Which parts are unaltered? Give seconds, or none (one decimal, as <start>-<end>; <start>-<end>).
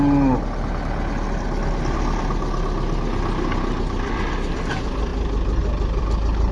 0.0-6.5